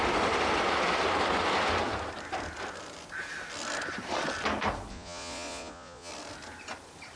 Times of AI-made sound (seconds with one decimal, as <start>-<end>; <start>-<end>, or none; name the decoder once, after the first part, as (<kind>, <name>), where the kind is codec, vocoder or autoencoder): 4.9-6.1 (vocoder, Vocos)